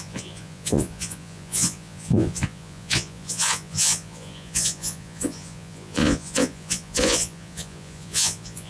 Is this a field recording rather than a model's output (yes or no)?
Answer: no